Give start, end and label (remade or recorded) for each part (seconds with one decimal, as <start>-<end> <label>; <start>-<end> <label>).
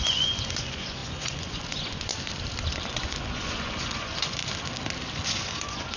0.0-2.1 remade; 2.1-2.8 recorded; 2.8-4.4 remade; 4.4-5.3 recorded; 5.3-6.0 remade